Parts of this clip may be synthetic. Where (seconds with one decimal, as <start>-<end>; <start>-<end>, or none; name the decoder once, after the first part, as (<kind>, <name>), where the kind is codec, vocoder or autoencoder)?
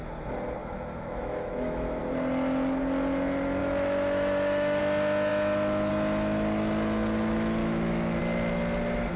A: 0.6-2.0 (autoencoder, DAC-VAE); 3.6-4.8; 7.6-8.2